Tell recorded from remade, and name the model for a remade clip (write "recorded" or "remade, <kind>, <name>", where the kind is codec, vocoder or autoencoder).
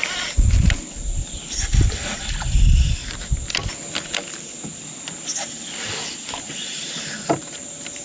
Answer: recorded